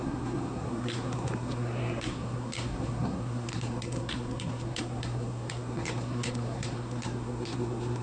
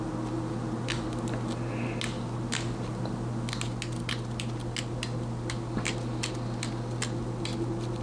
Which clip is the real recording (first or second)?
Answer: second